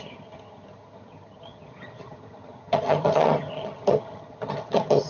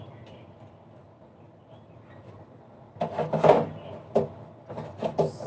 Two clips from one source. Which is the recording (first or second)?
second